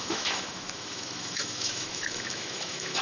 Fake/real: fake